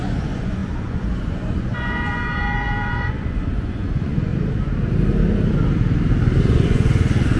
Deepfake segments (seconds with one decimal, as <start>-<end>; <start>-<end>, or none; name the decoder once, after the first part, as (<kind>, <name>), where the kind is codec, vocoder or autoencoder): 0.0-4.3 (vocoder, Vocos); 6.4-7.4